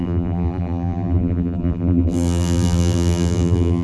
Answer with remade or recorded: remade